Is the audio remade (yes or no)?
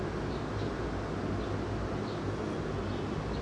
no